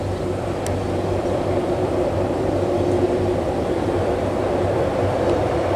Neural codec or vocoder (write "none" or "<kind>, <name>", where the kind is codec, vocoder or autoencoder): vocoder, BigVGAN v2